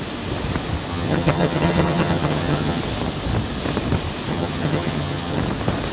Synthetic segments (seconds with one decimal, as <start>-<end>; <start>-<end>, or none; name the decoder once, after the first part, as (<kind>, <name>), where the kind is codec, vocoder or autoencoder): 0.9-2.8 (vocoder, HiFi-GAN); 4.3-5.4